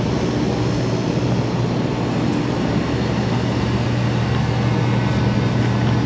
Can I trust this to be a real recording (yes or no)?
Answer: yes